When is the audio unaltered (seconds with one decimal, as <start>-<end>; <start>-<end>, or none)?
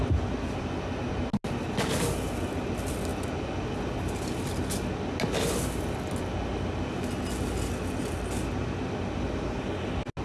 0.0-10.2